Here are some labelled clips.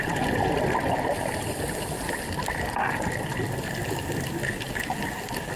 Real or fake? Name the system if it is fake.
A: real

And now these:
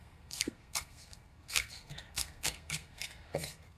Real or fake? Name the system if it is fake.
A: fake, codec, SNAC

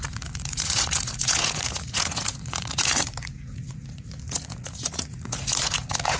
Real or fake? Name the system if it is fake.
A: fake, vocoder, Vocos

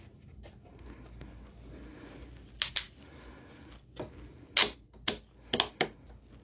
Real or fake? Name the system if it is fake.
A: real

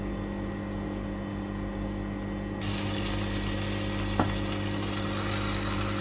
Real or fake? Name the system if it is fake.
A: real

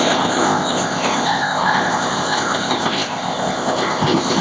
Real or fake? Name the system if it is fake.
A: fake, codec, ZipCodec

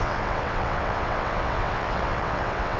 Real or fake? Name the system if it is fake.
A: fake, vocoder, WaveNeXt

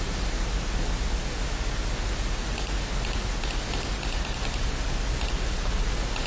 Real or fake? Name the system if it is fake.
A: real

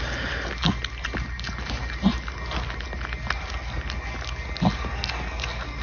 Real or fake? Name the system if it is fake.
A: real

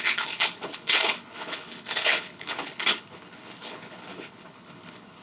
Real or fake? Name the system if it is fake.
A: fake, codec, HILCodec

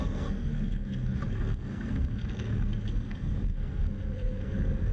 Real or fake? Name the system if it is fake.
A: fake, codec, SNAC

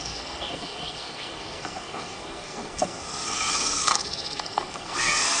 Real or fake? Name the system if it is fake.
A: fake, codec, SNAC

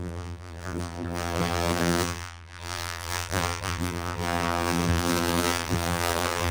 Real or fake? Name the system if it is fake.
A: fake, vocoder, BigVGAN v2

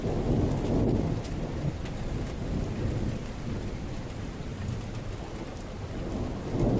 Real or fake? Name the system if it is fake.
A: real